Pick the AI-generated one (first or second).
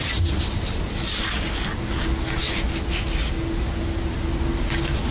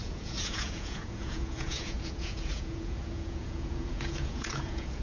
second